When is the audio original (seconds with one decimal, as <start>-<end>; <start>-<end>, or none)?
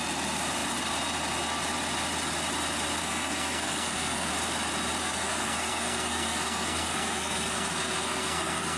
0.0-3.0; 4.3-5.0